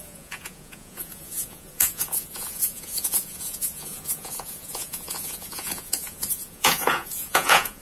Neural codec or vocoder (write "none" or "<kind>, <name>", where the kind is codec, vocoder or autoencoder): vocoder, Vocos